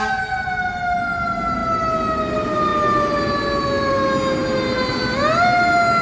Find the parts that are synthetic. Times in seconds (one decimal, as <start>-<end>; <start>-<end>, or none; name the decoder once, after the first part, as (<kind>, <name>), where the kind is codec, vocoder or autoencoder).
none